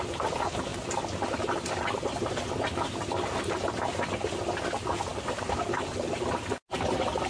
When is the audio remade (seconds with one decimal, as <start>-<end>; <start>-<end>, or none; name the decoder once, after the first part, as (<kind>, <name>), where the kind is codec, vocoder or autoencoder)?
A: 0.7-3.8 (vocoder, BigVGAN v2); 5.1-7.3